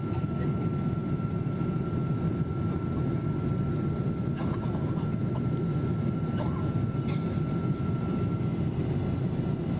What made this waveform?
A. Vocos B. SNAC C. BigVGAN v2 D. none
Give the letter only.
D